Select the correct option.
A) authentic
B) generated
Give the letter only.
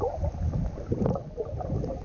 A